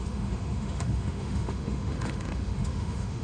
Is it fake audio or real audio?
fake